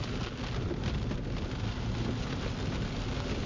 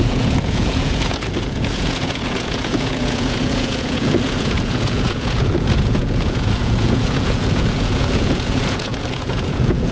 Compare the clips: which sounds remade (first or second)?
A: second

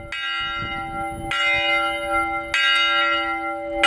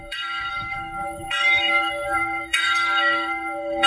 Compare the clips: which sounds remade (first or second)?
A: second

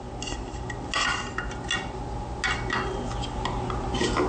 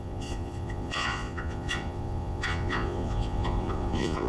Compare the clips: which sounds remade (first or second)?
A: second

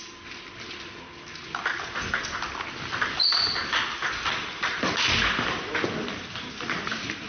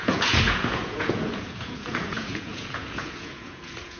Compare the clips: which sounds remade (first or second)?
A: second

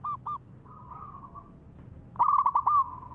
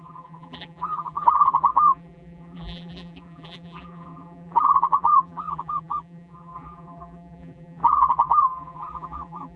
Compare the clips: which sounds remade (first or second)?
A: second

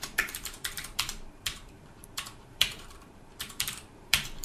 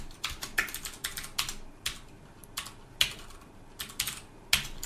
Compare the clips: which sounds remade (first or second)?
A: first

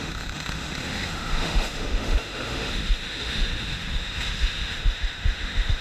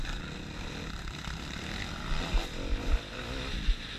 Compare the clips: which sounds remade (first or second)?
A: first